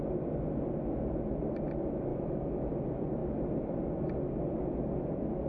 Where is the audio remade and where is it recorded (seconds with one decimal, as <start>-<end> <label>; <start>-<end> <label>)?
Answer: 0.0-2.1 recorded; 2.1-2.7 remade; 2.7-5.5 recorded

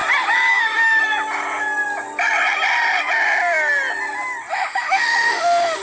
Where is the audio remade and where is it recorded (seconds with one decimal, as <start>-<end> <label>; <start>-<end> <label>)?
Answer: 0.0-0.5 recorded; 0.5-1.0 remade; 1.0-4.5 recorded; 4.5-5.8 remade